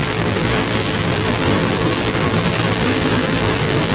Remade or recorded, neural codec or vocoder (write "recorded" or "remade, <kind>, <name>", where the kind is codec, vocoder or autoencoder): remade, vocoder, BigVGAN v2